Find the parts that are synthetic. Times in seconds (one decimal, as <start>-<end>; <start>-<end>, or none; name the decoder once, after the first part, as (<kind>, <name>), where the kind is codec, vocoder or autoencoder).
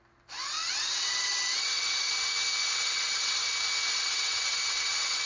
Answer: 0.4-2.1 (vocoder, WaveNeXt); 2.6-3.5; 3.9-5.2